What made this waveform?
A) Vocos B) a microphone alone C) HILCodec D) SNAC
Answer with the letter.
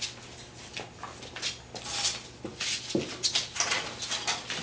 B